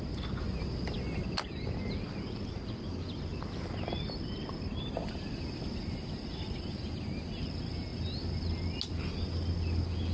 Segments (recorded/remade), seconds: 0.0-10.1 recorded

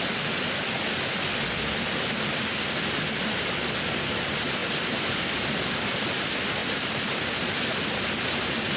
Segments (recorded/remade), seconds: 0.0-8.8 recorded

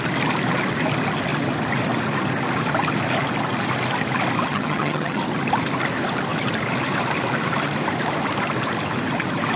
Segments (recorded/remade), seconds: 0.0-4.5 recorded; 4.5-5.2 remade; 5.2-9.6 recorded

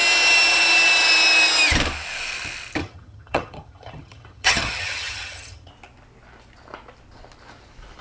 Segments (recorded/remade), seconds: 0.0-2.8 recorded; 2.8-5.7 remade; 5.7-8.0 recorded

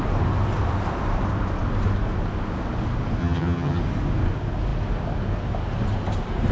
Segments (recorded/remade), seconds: 0.0-3.2 recorded; 3.2-3.8 remade; 3.8-6.5 recorded

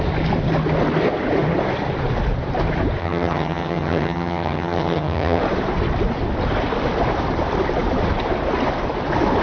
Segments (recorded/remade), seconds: 0.0-3.0 recorded; 3.0-5.4 remade; 5.4-9.4 recorded

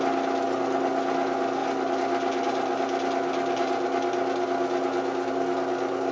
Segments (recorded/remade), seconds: 0.0-6.1 recorded